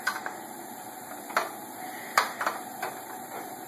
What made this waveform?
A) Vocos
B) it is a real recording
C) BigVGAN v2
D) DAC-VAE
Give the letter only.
C